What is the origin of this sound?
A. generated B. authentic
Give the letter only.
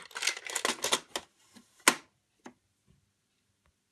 B